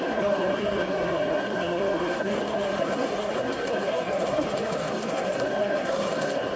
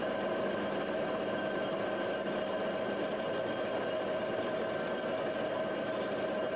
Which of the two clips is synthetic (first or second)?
first